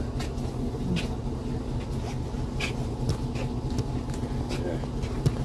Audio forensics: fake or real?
real